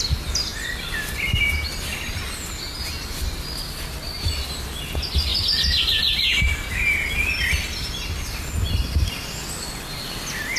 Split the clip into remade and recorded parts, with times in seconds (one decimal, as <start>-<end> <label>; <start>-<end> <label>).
0.0-10.6 recorded